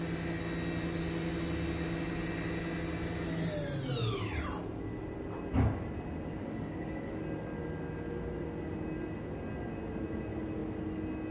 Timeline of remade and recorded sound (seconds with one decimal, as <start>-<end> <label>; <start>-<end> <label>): 0.0-6.4 recorded; 6.4-7.2 remade; 7.2-11.3 recorded